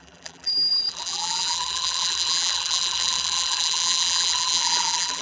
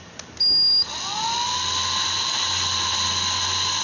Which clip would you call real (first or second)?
second